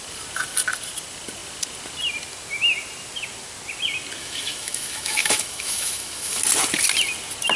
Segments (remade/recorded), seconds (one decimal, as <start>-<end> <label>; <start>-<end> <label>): 0.0-4.2 recorded; 4.2-6.4 remade; 6.4-7.6 recorded